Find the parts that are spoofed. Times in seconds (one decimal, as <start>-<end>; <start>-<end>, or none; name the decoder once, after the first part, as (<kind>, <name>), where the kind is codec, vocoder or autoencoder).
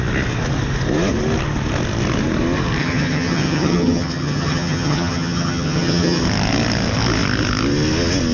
2.8-6.2 (vocoder, HiFi-GAN)